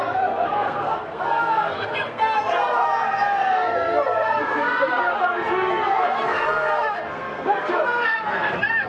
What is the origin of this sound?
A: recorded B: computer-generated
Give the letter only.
B